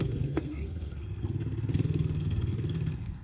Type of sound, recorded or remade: remade